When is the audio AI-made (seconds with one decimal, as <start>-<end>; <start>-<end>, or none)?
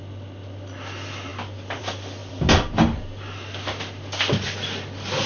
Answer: 2.2-3.0